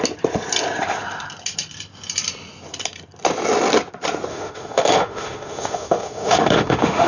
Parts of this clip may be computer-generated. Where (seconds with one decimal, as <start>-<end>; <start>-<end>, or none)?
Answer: 4.3-7.1

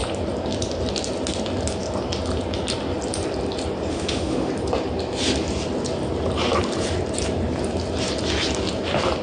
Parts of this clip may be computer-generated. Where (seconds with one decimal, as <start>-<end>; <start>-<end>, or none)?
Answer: 3.9-4.5